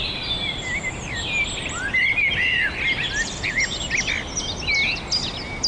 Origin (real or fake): real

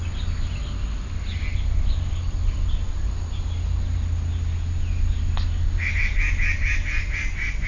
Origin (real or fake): real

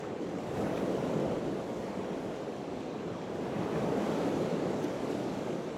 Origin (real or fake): fake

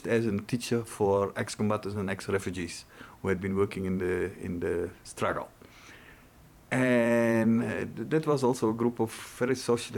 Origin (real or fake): fake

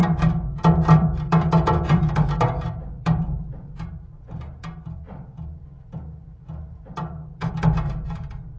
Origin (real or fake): fake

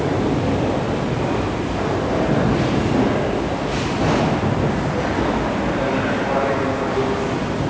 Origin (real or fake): real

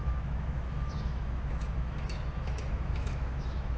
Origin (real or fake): fake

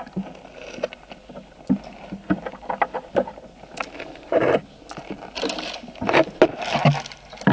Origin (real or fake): real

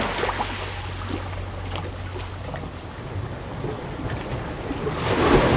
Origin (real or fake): real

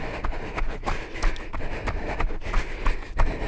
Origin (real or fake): real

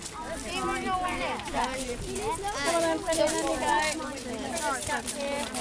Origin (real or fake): real